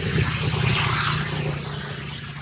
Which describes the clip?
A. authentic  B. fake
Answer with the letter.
A